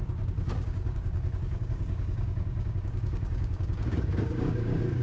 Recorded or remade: remade